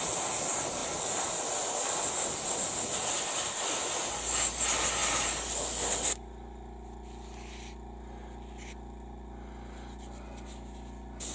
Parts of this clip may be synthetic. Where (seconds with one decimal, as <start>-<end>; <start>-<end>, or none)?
none